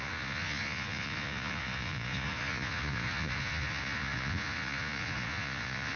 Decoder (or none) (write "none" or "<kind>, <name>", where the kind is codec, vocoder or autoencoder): vocoder, Vocos